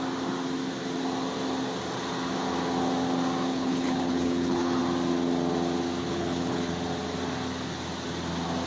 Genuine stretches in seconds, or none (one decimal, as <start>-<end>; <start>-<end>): 0.0-3.5; 4.8-6.0; 6.7-8.7